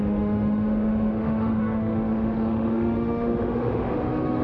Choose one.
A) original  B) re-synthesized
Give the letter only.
B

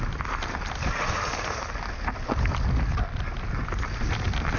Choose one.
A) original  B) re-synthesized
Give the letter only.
A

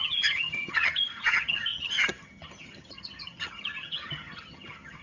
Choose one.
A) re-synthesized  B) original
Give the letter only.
A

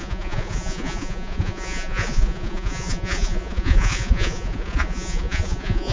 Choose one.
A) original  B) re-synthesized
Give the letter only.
B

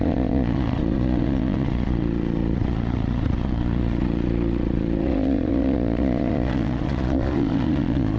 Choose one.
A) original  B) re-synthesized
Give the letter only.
B